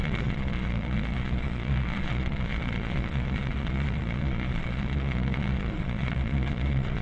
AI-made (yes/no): yes